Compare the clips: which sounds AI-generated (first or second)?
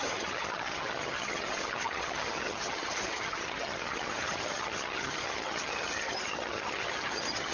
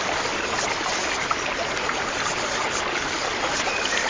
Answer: first